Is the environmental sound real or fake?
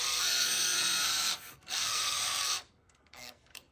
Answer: fake